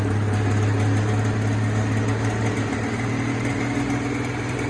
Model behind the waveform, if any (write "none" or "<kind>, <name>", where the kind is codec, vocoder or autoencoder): none